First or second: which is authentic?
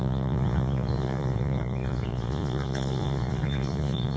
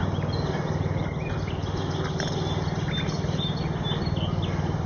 second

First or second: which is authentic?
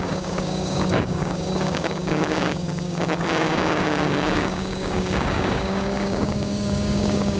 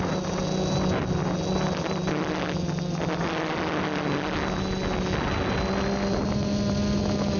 second